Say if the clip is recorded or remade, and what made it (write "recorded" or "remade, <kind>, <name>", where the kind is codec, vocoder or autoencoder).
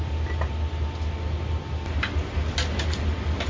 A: recorded